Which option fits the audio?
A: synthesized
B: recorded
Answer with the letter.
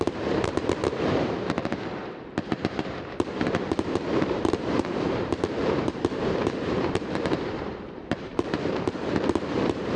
A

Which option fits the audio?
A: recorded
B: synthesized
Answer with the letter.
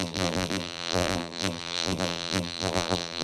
B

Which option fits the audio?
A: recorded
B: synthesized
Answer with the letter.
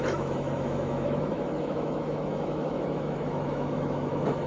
B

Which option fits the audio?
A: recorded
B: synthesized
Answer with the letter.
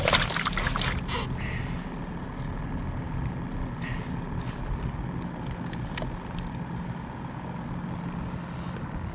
A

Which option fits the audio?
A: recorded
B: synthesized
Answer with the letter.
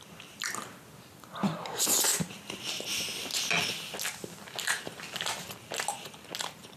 A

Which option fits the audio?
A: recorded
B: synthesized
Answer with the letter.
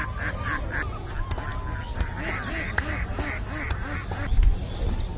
A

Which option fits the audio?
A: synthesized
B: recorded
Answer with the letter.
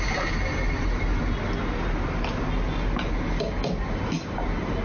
B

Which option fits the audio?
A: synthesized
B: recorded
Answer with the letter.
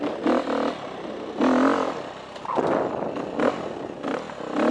B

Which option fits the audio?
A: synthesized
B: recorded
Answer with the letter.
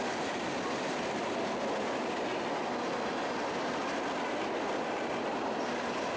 B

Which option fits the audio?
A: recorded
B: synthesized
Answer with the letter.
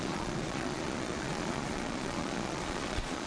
B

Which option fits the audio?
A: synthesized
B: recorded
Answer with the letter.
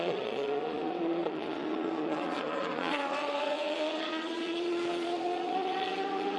A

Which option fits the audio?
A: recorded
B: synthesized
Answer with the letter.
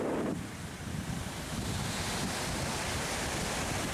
A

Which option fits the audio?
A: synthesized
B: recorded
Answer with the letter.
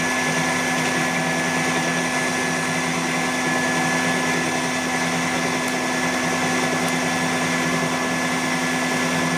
B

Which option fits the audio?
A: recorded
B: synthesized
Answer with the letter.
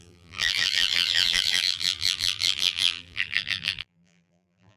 B